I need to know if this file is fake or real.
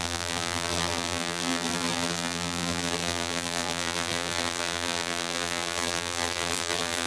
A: fake